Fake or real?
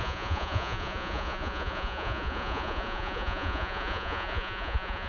fake